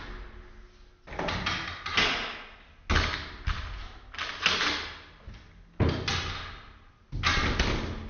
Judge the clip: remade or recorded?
recorded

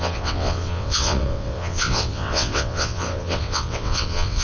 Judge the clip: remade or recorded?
remade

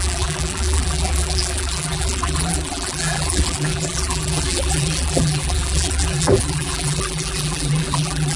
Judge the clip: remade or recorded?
remade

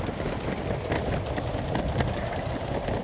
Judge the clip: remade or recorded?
recorded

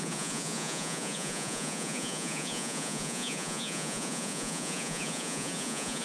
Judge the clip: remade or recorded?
remade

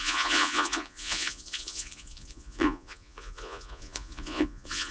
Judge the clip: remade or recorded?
remade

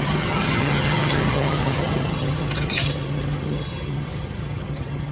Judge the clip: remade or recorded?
remade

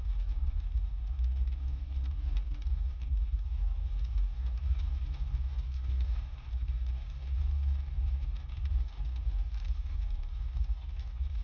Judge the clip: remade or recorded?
remade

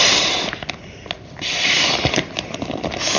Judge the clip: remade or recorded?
recorded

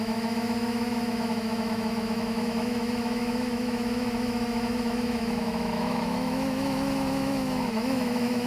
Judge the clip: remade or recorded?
remade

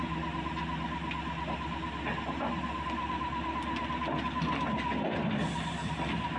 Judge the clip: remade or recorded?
recorded